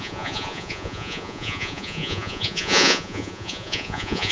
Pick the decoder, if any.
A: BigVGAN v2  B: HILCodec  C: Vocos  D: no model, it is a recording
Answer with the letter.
C